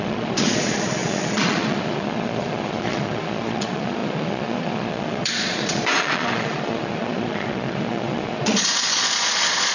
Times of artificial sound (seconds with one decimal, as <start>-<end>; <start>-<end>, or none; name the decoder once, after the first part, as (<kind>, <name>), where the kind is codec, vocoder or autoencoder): 0.0-9.7 (vocoder, Vocos)